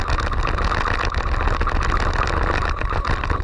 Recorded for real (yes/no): yes